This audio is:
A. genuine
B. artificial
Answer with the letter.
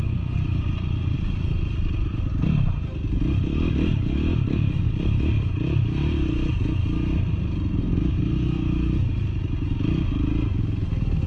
A